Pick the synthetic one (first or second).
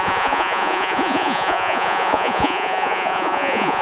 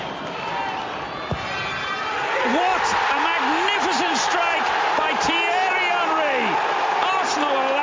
first